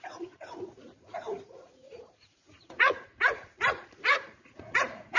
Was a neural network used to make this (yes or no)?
yes